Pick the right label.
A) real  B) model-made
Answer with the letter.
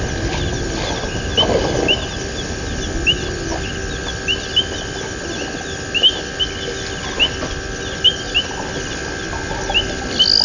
A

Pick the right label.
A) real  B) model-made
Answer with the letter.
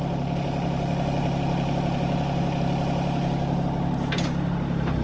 B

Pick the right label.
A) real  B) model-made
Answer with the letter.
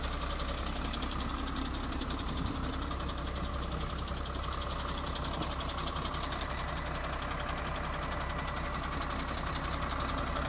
A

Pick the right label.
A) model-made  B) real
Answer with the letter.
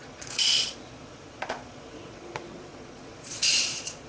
A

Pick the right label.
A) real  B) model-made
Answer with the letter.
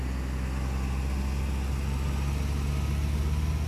A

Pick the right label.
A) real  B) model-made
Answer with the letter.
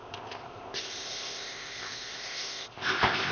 B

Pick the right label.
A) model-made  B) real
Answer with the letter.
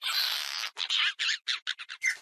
B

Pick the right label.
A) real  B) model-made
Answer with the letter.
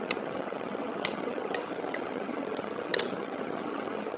B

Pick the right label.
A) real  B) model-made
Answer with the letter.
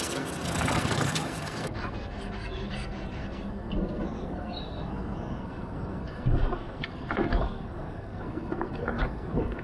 B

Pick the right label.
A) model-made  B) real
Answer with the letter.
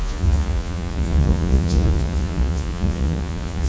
A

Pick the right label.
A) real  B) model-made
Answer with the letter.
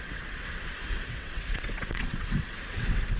B